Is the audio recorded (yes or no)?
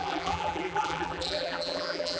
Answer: no